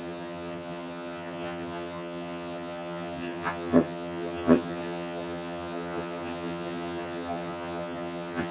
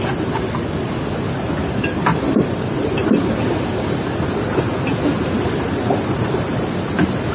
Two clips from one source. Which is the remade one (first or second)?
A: first